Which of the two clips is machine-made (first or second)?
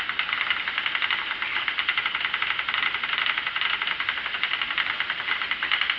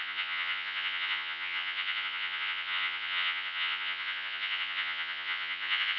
second